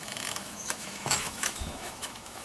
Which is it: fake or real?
fake